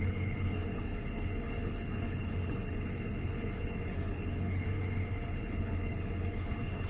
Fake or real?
fake